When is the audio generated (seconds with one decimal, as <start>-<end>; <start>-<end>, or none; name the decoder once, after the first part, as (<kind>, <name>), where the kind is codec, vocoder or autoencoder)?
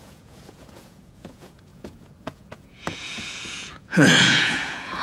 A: 0.0-5.0 (vocoder, Vocos)